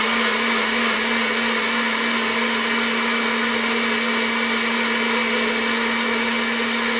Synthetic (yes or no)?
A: no